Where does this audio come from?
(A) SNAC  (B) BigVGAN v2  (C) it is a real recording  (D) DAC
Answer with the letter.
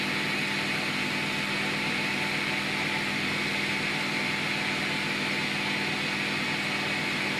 C